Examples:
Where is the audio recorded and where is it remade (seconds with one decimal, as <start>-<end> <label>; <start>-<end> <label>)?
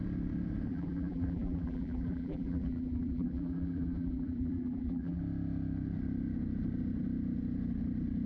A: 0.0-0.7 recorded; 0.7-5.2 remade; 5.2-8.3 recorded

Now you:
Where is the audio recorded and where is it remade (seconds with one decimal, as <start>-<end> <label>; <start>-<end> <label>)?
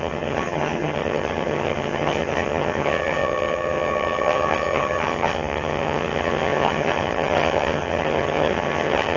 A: 0.0-9.2 remade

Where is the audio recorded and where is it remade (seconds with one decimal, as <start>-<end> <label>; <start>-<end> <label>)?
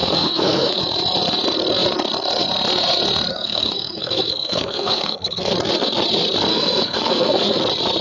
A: 0.0-0.8 remade; 0.8-3.3 recorded; 3.3-5.5 remade; 5.5-6.5 recorded; 6.5-7.6 remade; 7.6-8.0 recorded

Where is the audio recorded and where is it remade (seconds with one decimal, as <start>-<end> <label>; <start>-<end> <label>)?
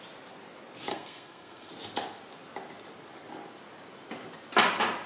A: 0.0-0.9 recorded; 0.9-1.7 remade; 1.7-5.1 recorded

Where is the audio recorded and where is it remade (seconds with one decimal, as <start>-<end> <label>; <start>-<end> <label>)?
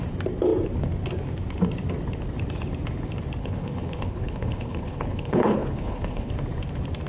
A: 0.0-3.4 recorded; 3.4-6.3 remade; 6.3-7.1 recorded